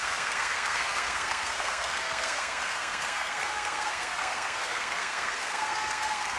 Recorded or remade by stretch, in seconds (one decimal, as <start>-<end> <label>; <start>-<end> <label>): 0.0-6.4 remade